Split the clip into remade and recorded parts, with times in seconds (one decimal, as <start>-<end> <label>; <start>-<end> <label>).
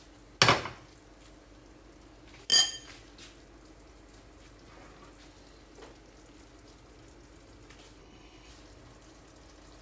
0.0-8.0 recorded; 8.0-8.5 remade; 8.5-9.8 recorded